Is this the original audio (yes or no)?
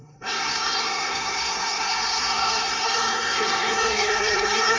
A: no